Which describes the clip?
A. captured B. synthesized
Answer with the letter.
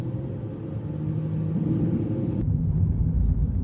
A